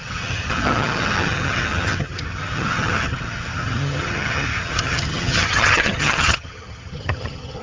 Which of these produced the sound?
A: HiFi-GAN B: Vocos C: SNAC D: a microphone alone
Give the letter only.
A